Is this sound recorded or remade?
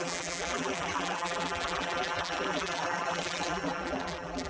remade